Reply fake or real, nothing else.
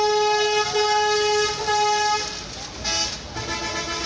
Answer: real